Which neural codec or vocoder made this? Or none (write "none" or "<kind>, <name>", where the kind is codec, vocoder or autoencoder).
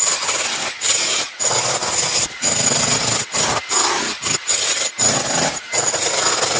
none